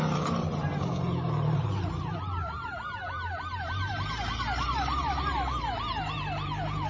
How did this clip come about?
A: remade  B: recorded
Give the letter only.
A